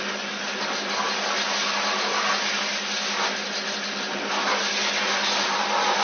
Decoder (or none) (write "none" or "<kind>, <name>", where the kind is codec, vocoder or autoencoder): none